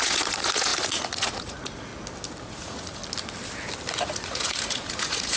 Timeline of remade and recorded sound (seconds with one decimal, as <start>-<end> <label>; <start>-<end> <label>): 0.0-1.9 remade; 1.9-2.5 recorded; 2.5-3.0 remade; 3.0-4.0 recorded; 4.0-5.4 remade